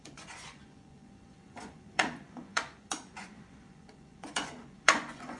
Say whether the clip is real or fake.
fake